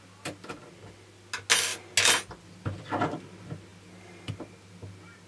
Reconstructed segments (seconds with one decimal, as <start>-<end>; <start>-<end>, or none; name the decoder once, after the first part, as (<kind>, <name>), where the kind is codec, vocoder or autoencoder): none

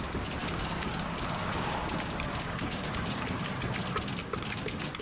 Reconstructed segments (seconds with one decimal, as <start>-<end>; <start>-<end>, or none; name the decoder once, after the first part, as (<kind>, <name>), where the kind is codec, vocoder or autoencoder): 0.4-3.4 (codec, DAC); 4.2-5.0

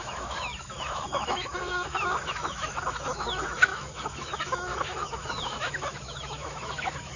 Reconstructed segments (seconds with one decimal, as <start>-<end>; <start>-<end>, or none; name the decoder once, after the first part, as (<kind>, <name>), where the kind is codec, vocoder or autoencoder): 0.0-7.2 (autoencoder, DAC-VAE)